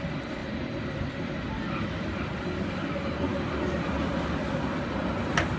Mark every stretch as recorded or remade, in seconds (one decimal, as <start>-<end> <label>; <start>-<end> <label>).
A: 0.0-5.6 recorded